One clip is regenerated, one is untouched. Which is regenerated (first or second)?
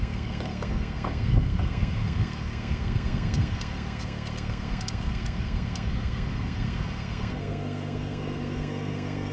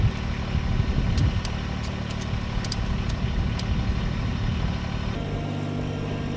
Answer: first